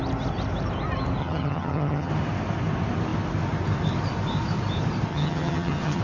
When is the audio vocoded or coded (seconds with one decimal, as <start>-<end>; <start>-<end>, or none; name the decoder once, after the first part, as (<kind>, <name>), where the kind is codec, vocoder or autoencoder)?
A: 1.2-2.1 (vocoder, HiFi-GAN); 5.1-6.0